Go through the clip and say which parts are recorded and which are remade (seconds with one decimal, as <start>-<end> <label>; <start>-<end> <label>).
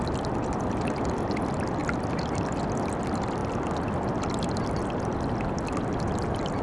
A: 0.0-6.6 recorded